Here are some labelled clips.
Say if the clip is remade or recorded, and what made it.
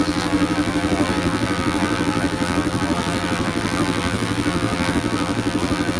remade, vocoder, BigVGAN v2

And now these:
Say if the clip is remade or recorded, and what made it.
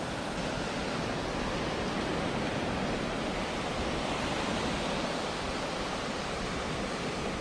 recorded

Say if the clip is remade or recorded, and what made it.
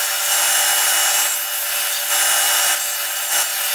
recorded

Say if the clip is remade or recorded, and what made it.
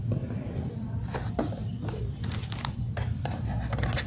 recorded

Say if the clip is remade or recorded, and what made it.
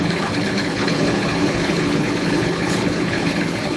remade, codec, HILCodec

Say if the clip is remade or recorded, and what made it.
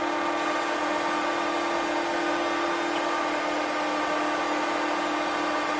recorded